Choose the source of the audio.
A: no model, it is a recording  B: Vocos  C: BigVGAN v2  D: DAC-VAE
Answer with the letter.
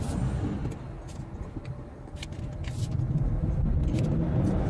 A